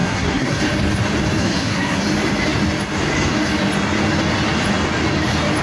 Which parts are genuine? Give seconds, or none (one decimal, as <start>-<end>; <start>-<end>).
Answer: 0.6-1.4; 2.0-5.6